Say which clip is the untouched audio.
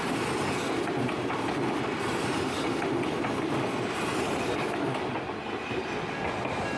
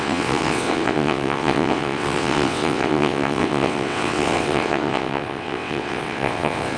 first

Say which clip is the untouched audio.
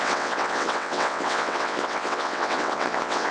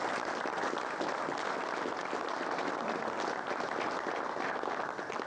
second